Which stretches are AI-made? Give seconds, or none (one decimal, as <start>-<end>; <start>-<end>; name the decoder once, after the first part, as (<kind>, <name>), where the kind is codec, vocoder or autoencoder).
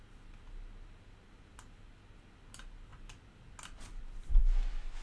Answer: none